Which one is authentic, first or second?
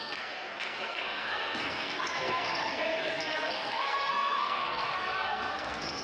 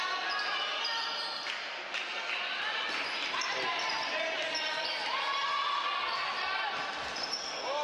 second